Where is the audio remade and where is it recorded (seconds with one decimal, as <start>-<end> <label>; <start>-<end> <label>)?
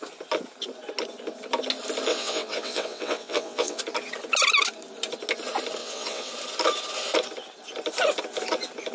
0.0-2.1 recorded; 2.1-3.8 remade; 3.8-5.8 recorded; 5.8-6.3 remade; 6.3-8.9 recorded